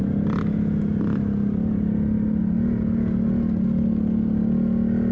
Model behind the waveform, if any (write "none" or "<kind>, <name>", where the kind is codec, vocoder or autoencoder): none